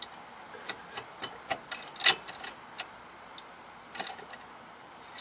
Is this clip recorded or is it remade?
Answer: recorded